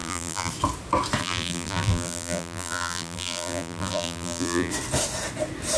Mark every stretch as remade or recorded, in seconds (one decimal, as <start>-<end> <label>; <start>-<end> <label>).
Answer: 0.0-0.5 remade; 0.5-1.2 recorded; 1.2-4.7 remade; 4.7-5.8 recorded